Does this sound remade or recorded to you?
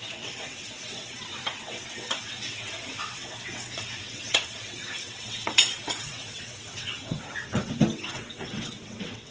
remade